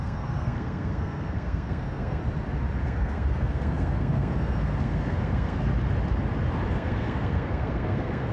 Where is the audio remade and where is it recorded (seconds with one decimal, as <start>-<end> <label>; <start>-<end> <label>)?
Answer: 0.0-2.2 remade; 2.2-2.8 recorded; 2.8-5.7 remade; 5.7-6.7 recorded; 6.7-8.3 remade